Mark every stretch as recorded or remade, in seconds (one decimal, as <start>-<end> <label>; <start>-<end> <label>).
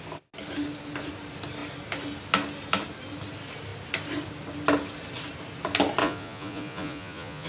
0.0-6.0 recorded; 6.0-7.5 remade